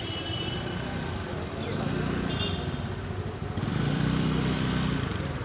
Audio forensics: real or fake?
fake